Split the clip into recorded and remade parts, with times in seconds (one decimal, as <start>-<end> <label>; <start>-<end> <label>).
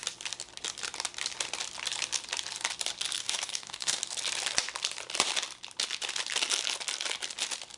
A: 0.0-3.2 recorded; 3.2-4.0 remade; 4.0-7.8 recorded